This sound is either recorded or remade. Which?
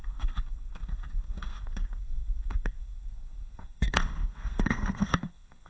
remade